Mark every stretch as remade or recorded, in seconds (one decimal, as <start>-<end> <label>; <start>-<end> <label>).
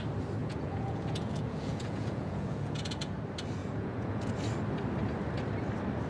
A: 0.0-0.4 recorded; 0.4-3.2 remade; 3.2-3.6 recorded; 3.6-4.3 remade; 4.3-6.1 recorded